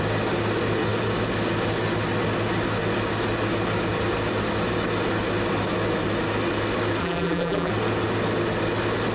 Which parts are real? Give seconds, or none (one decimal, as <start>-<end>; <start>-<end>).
0.0-7.0; 7.7-9.1